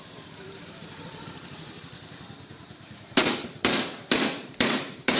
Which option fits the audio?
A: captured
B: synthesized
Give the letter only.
B